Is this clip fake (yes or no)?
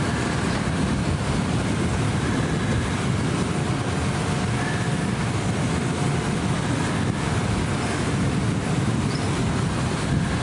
no